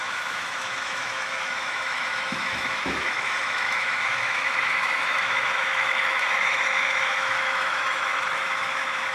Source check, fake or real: fake